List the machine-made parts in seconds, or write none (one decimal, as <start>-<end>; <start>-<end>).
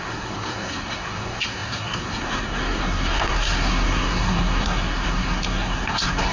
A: 0.0-6.3